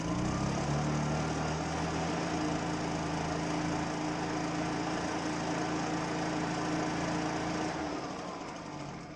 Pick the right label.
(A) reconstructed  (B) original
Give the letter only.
B